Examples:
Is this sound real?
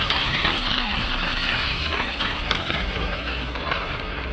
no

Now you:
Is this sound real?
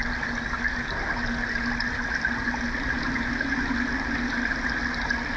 yes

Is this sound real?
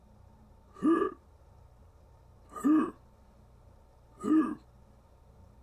no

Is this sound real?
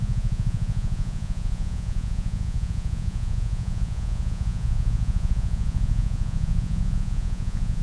no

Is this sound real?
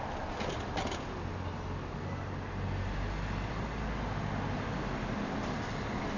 yes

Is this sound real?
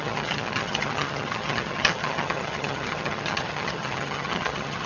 no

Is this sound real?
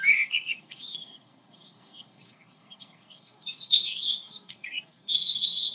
no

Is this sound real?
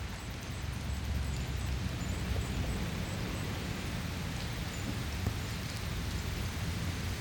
yes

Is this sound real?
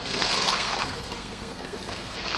no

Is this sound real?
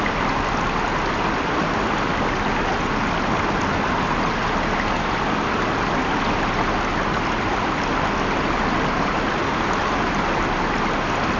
yes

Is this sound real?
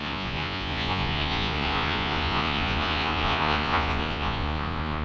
no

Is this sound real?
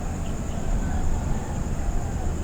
yes